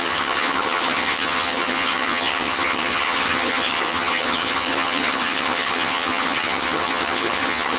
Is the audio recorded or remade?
remade